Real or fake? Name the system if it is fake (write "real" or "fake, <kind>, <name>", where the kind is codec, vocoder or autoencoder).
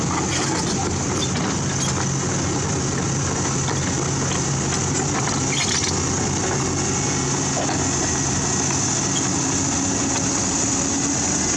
real